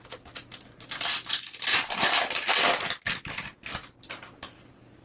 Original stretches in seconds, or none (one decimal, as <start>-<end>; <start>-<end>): 0.0-5.0